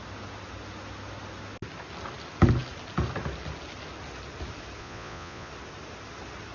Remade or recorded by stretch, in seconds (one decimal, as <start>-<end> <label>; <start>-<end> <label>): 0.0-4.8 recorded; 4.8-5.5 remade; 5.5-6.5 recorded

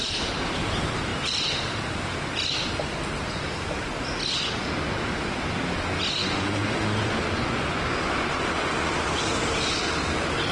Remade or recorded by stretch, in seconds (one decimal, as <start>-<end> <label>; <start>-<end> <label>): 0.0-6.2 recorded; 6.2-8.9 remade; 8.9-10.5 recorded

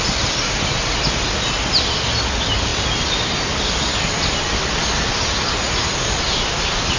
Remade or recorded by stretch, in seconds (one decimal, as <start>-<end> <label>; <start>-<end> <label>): 0.0-7.0 recorded